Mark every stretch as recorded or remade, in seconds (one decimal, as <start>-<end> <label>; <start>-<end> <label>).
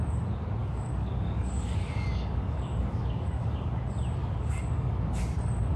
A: 0.0-0.6 recorded; 0.6-3.8 remade; 3.8-4.2 recorded; 4.2-5.2 remade; 5.2-5.8 recorded